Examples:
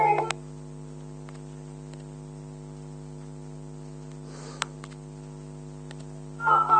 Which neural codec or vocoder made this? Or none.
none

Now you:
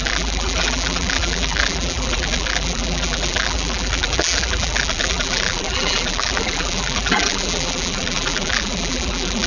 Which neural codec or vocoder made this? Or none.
vocoder, BigVGAN v2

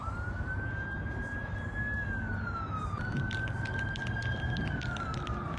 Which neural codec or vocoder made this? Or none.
none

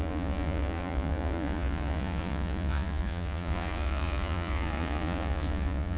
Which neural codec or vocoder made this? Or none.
vocoder, Vocos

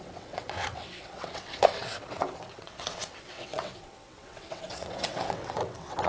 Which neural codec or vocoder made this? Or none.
vocoder, WaveNeXt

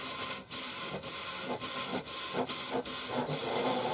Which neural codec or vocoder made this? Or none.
none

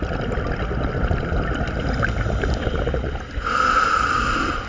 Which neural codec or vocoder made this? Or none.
vocoder, BigVGAN v2